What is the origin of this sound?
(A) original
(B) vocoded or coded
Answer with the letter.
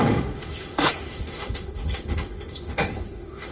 B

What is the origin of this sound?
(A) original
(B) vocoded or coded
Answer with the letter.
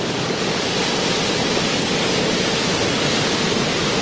A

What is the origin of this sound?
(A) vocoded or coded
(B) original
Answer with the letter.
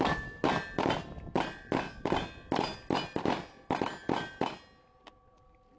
B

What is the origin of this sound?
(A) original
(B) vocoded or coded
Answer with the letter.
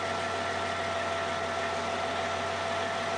A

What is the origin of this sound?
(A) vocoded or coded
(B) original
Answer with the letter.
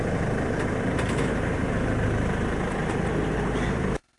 B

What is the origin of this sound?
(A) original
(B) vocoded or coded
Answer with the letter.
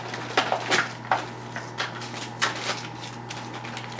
A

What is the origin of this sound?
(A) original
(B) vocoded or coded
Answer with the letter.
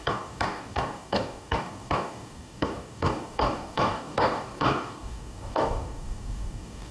B